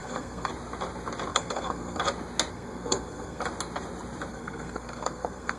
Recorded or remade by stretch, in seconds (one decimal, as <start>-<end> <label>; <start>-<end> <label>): 0.0-0.5 remade; 0.5-1.3 recorded; 1.3-2.0 remade; 2.0-2.5 recorded; 2.5-3.4 remade; 3.4-4.3 recorded; 4.3-5.6 remade